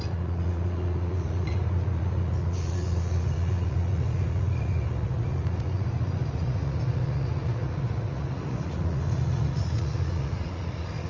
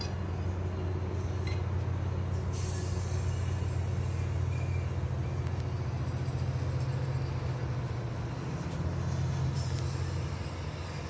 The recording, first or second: second